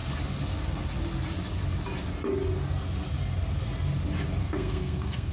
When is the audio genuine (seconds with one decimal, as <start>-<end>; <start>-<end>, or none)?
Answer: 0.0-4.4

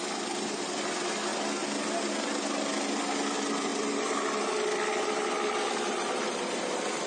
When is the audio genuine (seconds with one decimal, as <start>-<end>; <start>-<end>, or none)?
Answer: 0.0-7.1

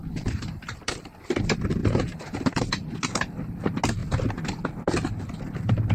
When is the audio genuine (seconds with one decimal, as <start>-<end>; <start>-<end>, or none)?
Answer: 0.9-1.8; 2.6-5.9

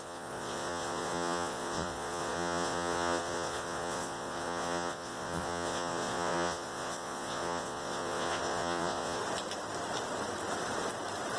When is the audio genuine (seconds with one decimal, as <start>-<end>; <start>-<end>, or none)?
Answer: 9.2-11.4

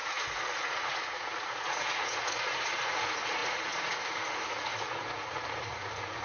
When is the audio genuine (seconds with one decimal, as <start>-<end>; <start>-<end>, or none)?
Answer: none

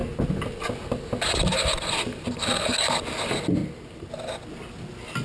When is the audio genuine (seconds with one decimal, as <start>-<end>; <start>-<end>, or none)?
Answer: 0.0-5.2

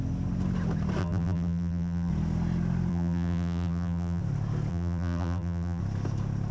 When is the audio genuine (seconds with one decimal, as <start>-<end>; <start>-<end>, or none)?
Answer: 0.0-1.0; 2.1-2.9; 4.2-4.7; 5.8-6.5

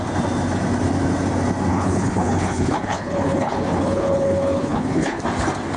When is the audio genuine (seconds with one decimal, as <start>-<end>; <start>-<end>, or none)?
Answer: 0.0-1.7; 5.2-5.8